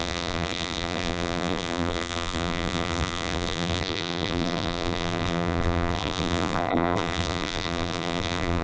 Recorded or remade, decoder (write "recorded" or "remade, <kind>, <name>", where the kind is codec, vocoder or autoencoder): remade, vocoder, BigVGAN v2